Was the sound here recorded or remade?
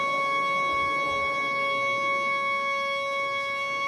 recorded